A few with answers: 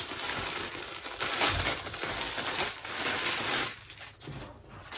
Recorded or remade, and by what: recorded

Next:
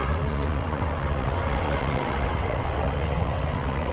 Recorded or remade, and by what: remade, vocoder, WaveNeXt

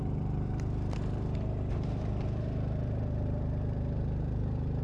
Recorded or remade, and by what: remade, vocoder, BigVGAN v2